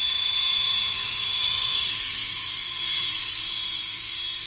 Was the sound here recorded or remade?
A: remade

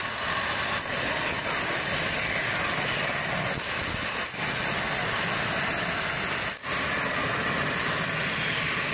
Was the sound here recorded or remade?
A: recorded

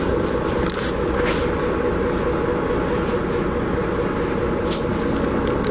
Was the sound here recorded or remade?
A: recorded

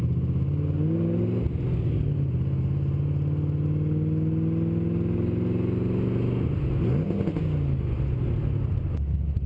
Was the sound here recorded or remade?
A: recorded